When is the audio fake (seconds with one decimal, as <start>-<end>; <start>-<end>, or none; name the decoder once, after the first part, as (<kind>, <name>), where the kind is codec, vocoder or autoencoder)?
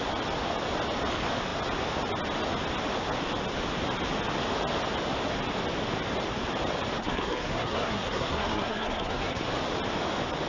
7.0-9.4 (codec, SNAC)